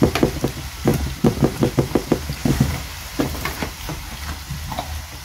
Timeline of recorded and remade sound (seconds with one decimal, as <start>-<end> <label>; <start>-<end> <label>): 0.0-0.9 recorded; 0.9-1.7 remade; 1.7-2.4 recorded; 2.4-4.1 remade; 4.1-5.2 recorded